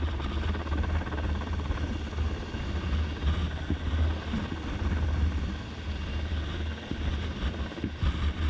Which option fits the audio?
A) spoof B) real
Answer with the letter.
B